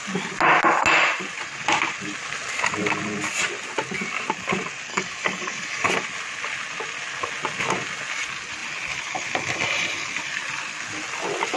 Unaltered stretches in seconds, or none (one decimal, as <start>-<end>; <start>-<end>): 0.0-4.9; 5.9-11.6